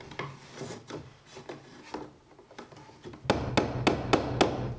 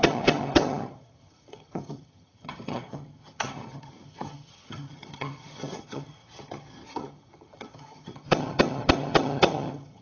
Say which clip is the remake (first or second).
second